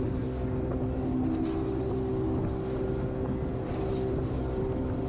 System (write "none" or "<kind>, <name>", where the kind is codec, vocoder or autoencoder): none